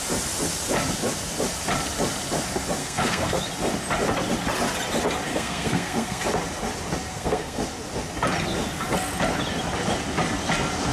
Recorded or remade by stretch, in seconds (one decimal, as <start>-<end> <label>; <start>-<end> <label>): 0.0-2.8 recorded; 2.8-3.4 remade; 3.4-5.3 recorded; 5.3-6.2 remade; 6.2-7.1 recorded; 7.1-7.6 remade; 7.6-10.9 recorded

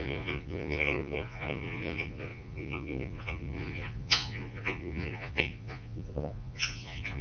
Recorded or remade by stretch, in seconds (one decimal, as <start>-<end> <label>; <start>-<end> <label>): 0.0-7.2 remade

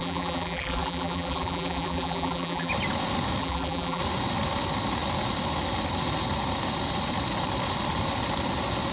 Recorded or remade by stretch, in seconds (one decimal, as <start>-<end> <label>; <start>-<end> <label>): 0.0-2.7 remade; 2.7-3.4 recorded; 3.4-4.0 remade; 4.0-8.9 recorded

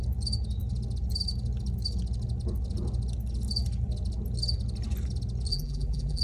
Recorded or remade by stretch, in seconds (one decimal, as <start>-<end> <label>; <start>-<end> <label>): 0.0-5.5 recorded; 5.5-6.2 remade

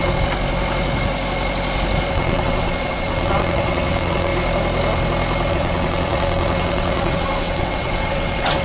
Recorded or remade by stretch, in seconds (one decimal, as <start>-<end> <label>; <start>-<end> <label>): 0.0-2.1 recorded; 2.1-4.3 remade; 4.3-5.5 recorded; 5.5-8.6 remade

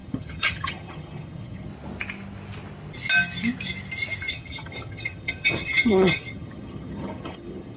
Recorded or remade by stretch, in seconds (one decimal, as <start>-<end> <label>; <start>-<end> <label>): 0.0-1.7 remade; 1.7-4.3 recorded; 4.3-7.8 remade

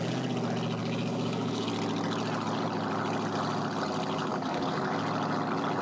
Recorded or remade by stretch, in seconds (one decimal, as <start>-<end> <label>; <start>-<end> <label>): 0.0-0.8 recorded; 0.8-1.7 remade; 1.7-4.3 recorded; 4.3-4.9 remade; 4.9-5.8 recorded

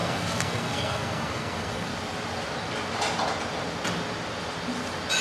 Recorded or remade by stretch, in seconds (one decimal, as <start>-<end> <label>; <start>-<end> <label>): 0.0-1.9 remade; 1.9-5.2 recorded